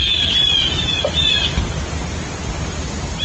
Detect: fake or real real